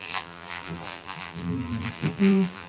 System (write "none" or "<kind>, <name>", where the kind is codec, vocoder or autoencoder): vocoder, BigVGAN v2